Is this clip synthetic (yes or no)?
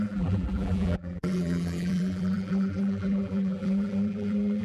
yes